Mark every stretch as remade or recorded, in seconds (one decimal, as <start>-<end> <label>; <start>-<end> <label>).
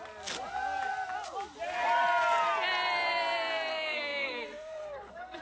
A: 0.0-3.7 recorded; 3.7-5.4 remade